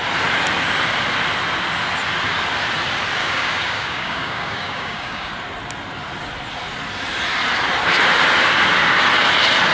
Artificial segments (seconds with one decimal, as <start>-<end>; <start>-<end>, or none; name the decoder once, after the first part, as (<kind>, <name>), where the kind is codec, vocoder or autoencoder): 3.2-5.3 (codec, DAC)